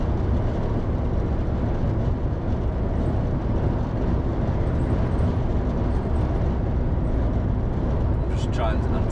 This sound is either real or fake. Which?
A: real